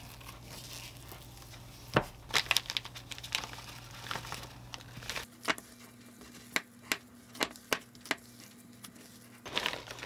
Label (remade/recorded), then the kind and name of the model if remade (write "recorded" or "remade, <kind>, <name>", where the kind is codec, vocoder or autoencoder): recorded